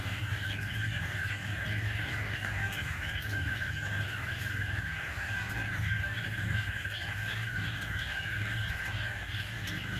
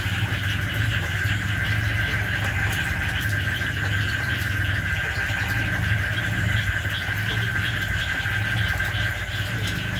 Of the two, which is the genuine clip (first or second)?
second